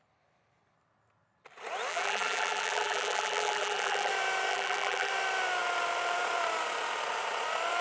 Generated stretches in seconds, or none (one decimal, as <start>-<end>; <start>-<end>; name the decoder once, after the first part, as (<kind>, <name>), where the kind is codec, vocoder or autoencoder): 1.9-4.1 (vocoder, BigVGAN v2); 4.5-5.1